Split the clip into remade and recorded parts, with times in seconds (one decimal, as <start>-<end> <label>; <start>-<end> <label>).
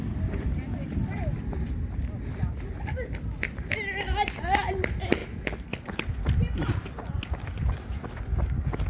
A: 0.0-8.9 recorded